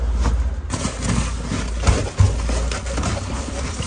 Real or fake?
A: real